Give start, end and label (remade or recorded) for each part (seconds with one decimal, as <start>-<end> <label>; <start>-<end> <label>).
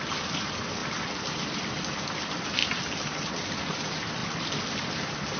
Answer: 0.0-5.4 recorded